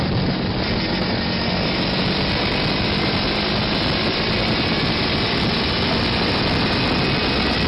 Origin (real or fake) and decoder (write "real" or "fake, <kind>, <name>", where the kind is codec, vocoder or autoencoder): real